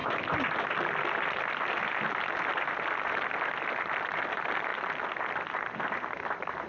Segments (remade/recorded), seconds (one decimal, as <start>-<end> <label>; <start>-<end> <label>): 0.0-6.7 recorded